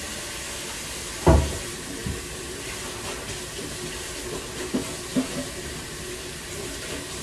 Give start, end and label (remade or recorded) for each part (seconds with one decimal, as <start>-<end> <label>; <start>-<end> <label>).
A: 0.0-7.2 recorded